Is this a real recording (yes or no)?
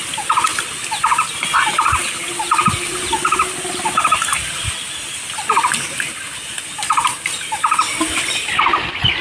yes